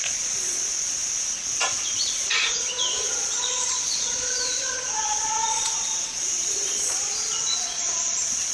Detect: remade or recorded remade